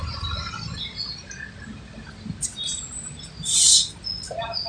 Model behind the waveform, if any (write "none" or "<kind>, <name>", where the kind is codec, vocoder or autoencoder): none